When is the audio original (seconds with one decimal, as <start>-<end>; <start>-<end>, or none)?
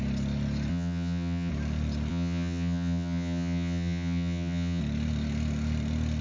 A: 0.0-0.7; 1.5-2.1; 4.8-6.2